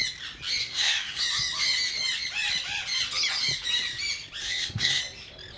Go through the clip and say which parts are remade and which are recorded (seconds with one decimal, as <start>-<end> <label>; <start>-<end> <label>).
0.0-0.6 recorded; 0.6-1.2 remade; 1.2-4.4 recorded; 4.4-5.0 remade; 5.0-5.6 recorded